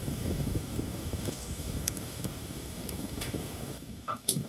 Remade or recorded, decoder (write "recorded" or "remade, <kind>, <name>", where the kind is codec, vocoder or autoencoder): remade, codec, DAC